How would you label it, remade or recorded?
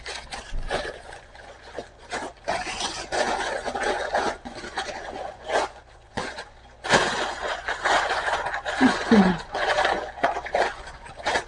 remade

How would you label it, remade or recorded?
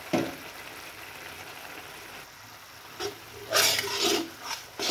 recorded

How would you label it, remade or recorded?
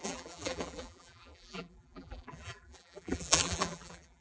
remade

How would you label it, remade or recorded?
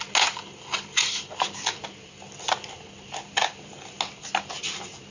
recorded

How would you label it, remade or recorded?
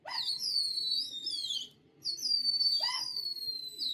recorded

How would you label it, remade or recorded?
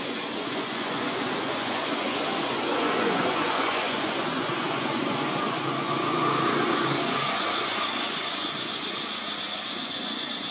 remade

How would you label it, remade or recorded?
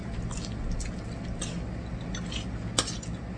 recorded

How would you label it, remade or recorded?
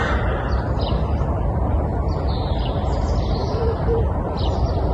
recorded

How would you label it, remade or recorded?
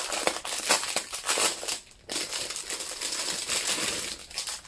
recorded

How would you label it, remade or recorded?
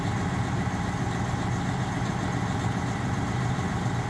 recorded